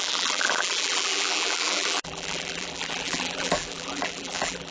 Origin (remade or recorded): remade